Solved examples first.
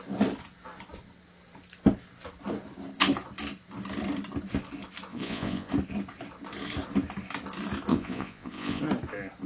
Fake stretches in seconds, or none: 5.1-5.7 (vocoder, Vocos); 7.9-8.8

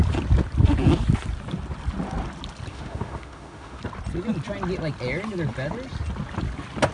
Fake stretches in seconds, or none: 2.7-3.8 (autoencoder, DAC-VAE)

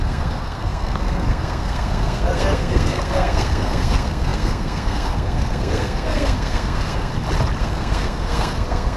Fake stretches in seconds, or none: 0.0-7.1 (codec, SNAC); 7.6-9.0

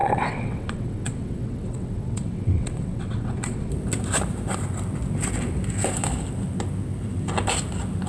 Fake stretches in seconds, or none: 0.0-3.7 (vocoder, WaveNeXt)

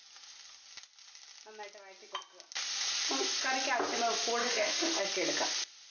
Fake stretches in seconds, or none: 4.4-5.0 (autoencoder, DAC-VAE)